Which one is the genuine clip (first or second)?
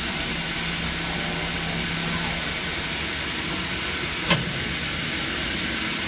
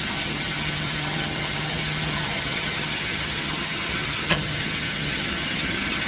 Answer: first